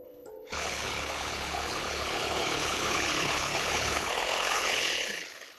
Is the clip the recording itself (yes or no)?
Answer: no